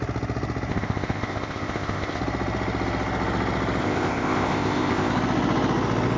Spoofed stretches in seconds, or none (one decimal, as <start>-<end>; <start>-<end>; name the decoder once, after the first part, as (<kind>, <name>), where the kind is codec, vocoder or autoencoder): 0.7-2.2 (codec, ZipCodec); 3.8-5.1